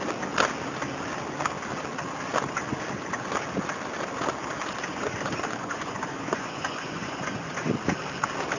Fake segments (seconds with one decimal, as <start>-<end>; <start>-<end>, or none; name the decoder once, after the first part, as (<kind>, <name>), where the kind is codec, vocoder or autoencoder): 4.9-7.7 (vocoder, Vocos)